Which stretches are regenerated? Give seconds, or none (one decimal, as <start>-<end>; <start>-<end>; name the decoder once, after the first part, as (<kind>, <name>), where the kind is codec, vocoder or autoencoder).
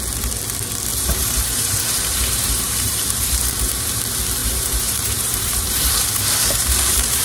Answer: 0.9-4.0 (vocoder, BigVGAN v2); 4.4-7.2